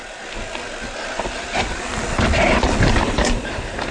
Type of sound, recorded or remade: recorded